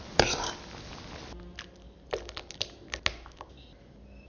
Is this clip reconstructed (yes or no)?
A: no